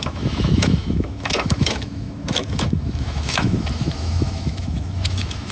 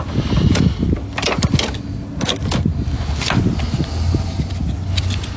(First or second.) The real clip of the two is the second